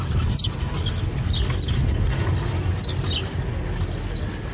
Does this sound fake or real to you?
real